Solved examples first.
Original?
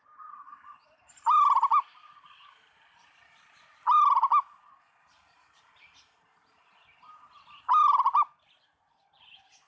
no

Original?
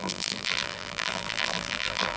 no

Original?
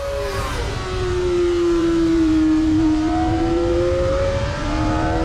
no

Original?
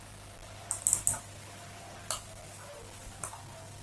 yes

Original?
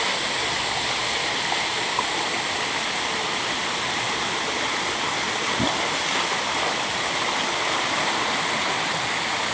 yes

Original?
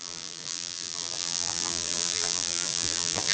no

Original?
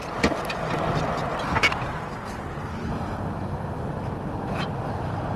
no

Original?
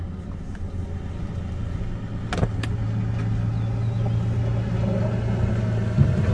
yes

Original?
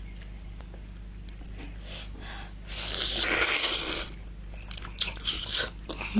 yes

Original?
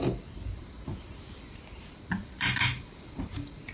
yes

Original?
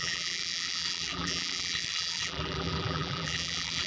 no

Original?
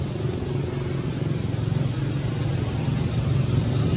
yes